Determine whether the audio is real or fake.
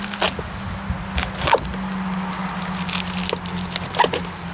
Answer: real